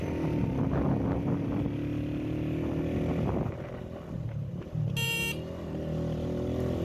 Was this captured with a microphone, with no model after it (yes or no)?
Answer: yes